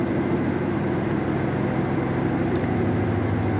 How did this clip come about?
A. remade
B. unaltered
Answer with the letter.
B